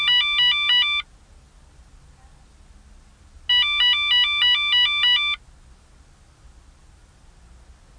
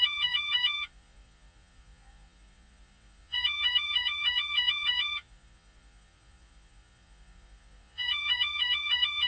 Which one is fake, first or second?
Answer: second